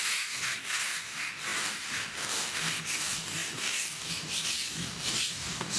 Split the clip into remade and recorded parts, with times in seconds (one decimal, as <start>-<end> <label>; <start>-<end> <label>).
0.0-5.8 remade